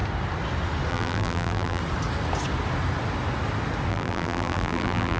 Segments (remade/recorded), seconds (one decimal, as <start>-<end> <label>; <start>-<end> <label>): 0.0-0.9 recorded; 0.9-1.8 remade; 1.8-3.9 recorded; 3.9-5.2 remade